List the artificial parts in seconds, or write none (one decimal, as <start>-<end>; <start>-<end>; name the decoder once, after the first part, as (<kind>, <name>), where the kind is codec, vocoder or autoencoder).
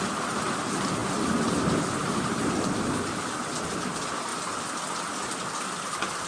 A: 1.0-2.5 (vocoder, BigVGAN v2)